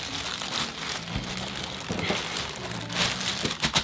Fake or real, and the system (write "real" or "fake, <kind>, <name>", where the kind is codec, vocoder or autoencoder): real